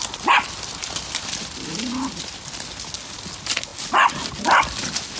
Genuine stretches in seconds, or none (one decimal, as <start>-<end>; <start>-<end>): 0.0-0.8; 2.2-5.2